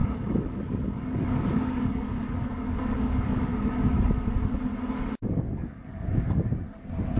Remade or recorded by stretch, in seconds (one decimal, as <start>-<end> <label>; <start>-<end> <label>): 0.0-4.3 remade; 4.3-5.0 recorded; 5.0-6.5 remade; 6.5-7.2 recorded